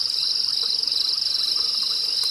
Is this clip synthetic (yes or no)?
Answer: no